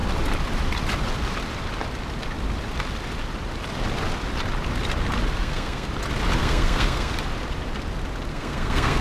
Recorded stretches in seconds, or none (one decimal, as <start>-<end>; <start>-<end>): 0.0-5.4; 5.9-6.4; 7.1-8.3